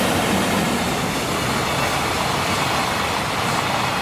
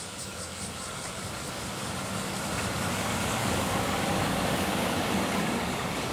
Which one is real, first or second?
first